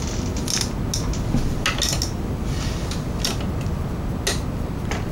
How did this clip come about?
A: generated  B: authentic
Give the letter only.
B